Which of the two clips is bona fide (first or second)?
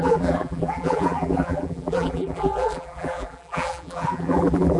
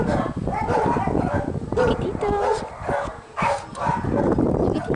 second